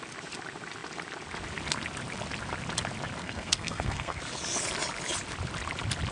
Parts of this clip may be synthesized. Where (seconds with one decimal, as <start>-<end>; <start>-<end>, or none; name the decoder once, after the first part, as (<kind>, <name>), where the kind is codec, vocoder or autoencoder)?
3.2-4.2 (codec, SNAC)